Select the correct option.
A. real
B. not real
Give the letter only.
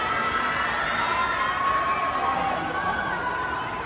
A